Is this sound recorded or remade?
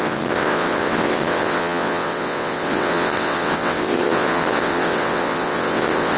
remade